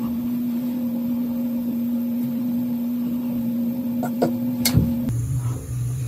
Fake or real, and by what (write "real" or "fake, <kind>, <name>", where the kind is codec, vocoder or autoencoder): fake, vocoder, BigVGAN v2